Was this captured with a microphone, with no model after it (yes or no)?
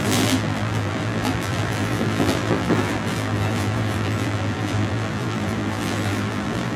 no